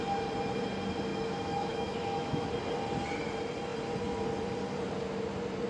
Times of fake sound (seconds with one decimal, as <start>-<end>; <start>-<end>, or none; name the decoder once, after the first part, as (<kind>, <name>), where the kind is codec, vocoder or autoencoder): 1.1-2.5 (autoencoder, DAC-VAE)